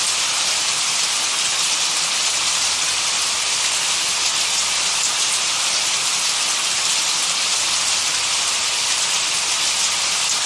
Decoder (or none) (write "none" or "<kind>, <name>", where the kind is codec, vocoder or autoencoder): none